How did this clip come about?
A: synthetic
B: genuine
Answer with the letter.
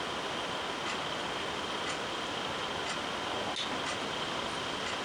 B